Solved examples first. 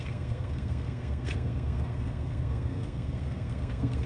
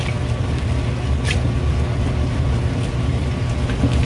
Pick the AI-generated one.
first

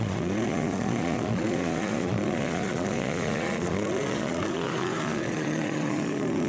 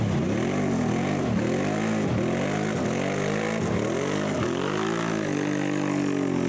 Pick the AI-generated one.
first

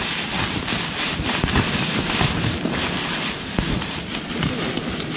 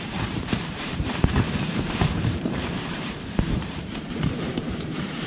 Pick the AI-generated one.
second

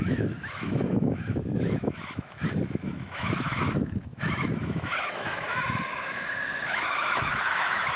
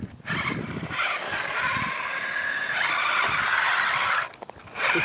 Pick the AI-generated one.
first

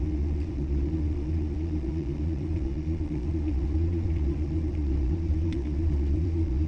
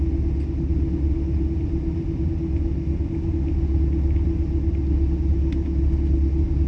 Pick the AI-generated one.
first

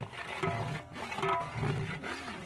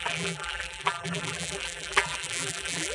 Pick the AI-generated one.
second